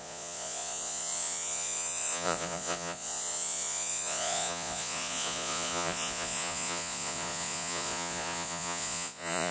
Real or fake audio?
fake